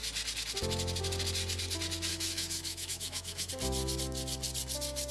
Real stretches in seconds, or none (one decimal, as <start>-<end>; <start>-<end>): 0.0-2.1; 3.5-5.1